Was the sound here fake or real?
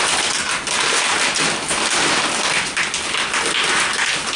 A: real